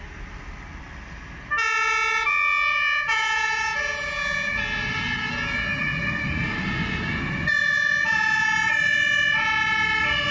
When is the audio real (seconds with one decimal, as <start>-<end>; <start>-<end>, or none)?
0.0-2.7; 4.6-7.6; 8.7-10.3